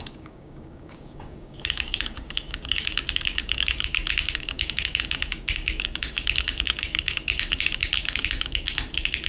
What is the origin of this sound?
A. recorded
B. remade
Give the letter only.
B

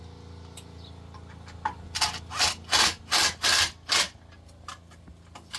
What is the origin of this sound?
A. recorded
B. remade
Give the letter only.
A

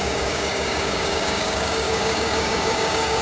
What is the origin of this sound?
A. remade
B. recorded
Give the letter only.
A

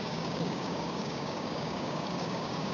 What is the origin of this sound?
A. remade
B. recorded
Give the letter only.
A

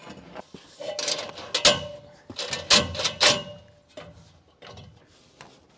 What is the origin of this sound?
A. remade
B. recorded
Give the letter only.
B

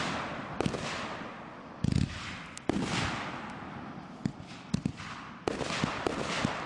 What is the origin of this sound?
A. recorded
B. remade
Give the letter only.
A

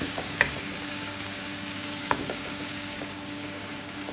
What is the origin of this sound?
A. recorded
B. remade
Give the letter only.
B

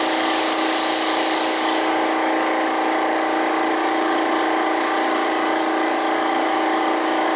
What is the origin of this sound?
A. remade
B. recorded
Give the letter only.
A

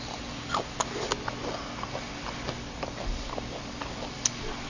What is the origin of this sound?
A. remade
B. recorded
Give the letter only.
B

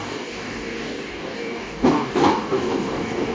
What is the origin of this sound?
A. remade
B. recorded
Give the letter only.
A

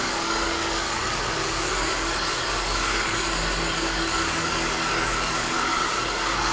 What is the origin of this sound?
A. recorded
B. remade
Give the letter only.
B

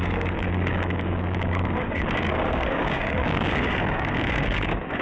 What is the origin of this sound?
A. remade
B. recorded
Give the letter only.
A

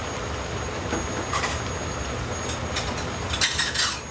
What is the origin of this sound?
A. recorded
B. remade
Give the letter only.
A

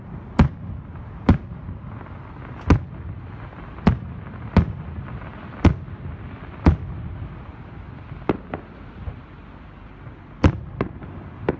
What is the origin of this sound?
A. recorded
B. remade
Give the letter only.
A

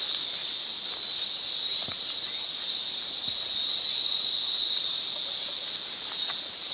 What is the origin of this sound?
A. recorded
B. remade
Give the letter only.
A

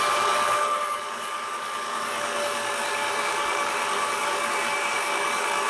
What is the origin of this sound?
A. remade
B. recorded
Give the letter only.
A